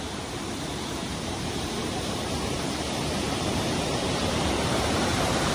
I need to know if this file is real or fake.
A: fake